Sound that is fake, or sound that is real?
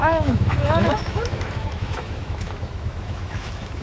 fake